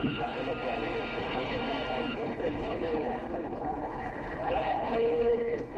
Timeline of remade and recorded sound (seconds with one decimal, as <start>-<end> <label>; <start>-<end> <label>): 0.0-0.4 remade; 0.4-1.2 recorded; 1.2-1.6 remade; 1.6-2.1 recorded; 2.1-5.8 remade

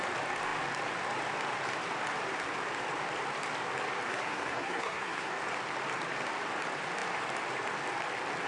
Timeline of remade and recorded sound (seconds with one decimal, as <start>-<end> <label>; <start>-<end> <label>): 0.0-4.1 recorded; 4.1-5.3 remade; 5.3-8.5 recorded

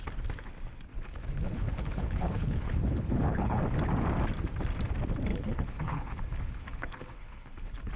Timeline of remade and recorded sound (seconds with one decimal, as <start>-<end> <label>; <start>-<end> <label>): 0.0-0.9 recorded; 0.9-3.6 remade; 3.6-5.3 recorded; 5.3-8.0 remade